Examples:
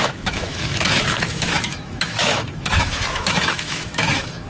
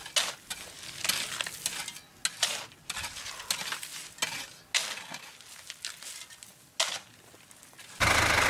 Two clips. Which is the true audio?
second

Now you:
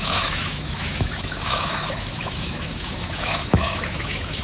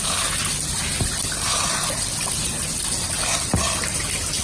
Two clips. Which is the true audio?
second